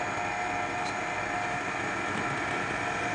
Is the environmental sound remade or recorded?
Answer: recorded